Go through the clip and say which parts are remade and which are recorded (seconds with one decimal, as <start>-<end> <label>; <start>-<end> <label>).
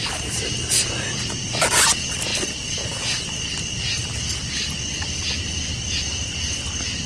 0.0-0.7 remade; 0.7-7.1 recorded